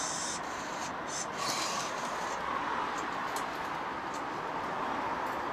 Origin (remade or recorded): recorded